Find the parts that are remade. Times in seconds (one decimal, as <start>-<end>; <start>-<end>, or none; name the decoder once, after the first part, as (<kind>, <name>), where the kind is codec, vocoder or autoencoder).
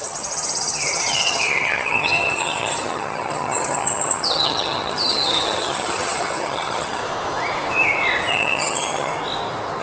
0.0-7.0 (vocoder, HiFi-GAN); 8.3-9.1